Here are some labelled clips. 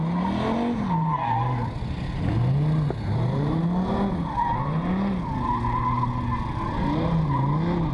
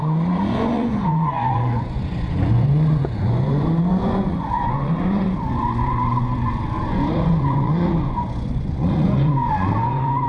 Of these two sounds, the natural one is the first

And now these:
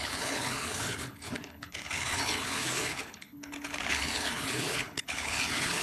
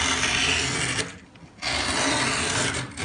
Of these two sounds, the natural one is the second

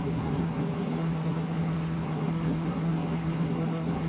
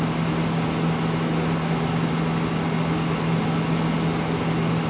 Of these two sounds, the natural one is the second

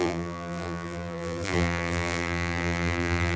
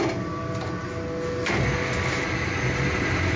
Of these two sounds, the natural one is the second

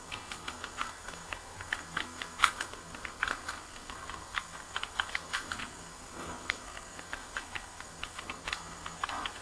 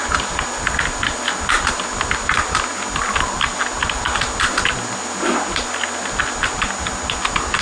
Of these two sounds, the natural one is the second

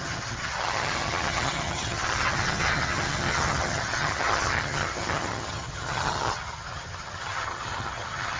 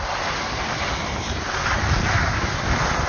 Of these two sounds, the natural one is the second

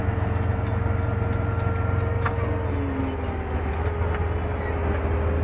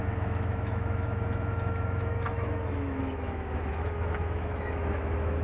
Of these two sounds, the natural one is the first